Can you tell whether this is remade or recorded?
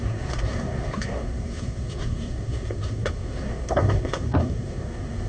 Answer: remade